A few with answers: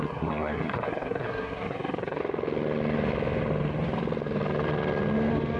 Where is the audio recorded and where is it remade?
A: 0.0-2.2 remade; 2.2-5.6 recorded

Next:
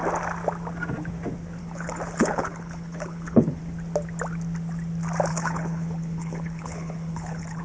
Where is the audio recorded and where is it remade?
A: 0.0-1.6 recorded; 1.6-3.6 remade; 3.6-5.3 recorded; 5.3-7.6 remade

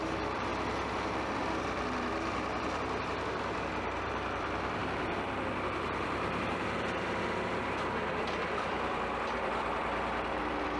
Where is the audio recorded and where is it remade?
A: 0.0-0.5 remade; 0.5-1.2 recorded; 1.2-10.8 remade